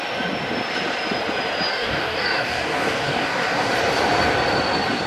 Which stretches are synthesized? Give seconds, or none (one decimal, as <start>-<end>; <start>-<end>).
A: 1.7-3.7